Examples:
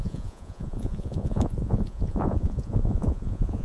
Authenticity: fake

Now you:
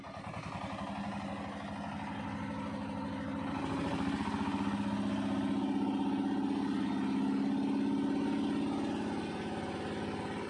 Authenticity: real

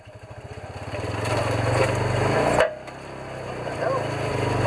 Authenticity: real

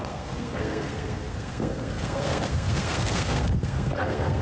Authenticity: fake